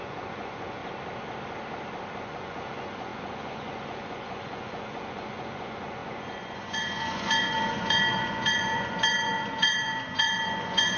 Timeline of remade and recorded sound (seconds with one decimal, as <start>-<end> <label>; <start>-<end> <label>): 0.0-0.8 remade; 0.8-2.2 recorded; 2.2-11.0 remade